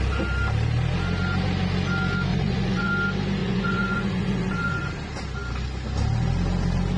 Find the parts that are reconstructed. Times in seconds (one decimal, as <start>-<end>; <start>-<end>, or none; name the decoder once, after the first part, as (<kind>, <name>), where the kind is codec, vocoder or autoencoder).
2.3-2.9 (vocoder, Vocos); 3.4-4.9